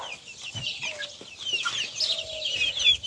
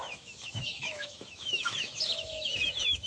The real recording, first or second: first